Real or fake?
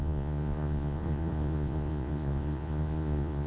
fake